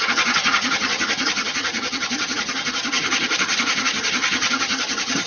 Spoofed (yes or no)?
yes